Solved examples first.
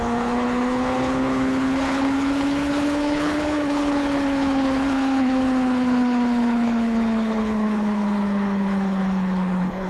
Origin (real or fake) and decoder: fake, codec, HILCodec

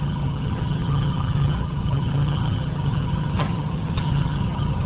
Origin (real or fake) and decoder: fake, vocoder, HiFi-GAN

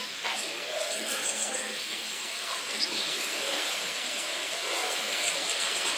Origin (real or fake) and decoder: fake, codec, SNAC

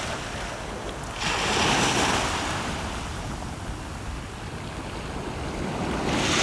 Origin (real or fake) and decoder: real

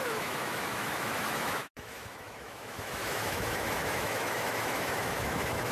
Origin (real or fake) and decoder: fake, autoencoder, DAC-VAE